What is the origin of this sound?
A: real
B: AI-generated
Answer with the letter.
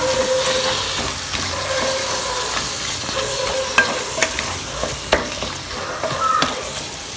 A